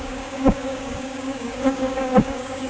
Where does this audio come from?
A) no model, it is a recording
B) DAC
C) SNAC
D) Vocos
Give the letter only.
B